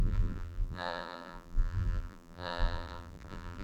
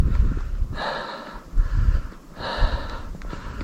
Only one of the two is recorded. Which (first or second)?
second